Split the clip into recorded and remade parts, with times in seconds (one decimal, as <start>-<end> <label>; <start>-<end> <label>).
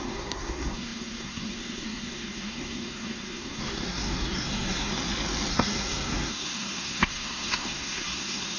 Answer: 0.0-4.9 remade; 4.9-5.5 recorded; 5.5-8.6 remade